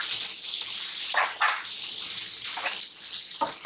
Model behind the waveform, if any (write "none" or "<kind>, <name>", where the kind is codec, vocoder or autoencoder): none